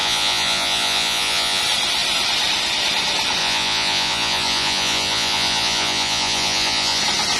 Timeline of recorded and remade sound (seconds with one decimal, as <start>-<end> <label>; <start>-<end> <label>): 0.0-1.6 remade; 1.6-3.4 recorded; 3.4-7.0 remade; 7.0-7.4 recorded